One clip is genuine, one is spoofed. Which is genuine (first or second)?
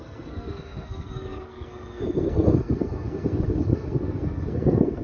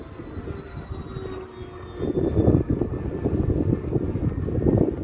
second